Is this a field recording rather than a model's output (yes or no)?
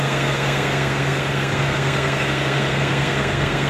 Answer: no